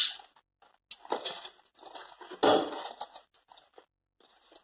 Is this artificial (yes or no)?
no